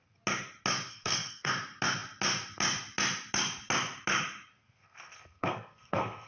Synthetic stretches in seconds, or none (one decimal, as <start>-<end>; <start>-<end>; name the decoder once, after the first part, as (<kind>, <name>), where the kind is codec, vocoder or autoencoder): 0.9-1.5 (codec, SNAC); 4.6-6.3